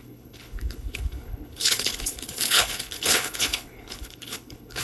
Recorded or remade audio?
remade